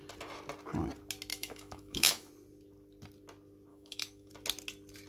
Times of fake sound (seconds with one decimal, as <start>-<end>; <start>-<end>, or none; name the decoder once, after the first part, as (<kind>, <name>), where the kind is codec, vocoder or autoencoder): 1.3-2.3 (autoencoder, DAC-VAE); 3.7-4.3